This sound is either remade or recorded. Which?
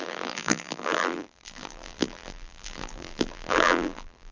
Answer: remade